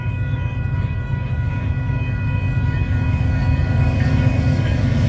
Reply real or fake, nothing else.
fake